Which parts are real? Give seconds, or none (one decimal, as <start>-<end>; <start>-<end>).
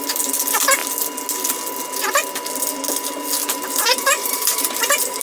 0.0-3.4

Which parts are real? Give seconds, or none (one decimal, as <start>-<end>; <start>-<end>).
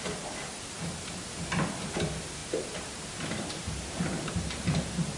0.0-2.4; 4.3-5.2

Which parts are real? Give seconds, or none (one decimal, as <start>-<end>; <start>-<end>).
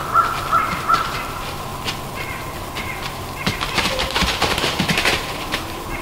0.0-0.6; 1.7-3.1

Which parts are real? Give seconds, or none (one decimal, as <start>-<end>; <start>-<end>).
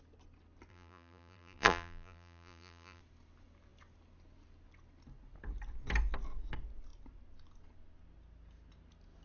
0.0-0.7; 3.0-9.2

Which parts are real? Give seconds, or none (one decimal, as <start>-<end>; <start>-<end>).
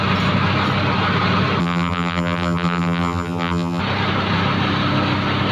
0.0-1.6; 3.8-5.5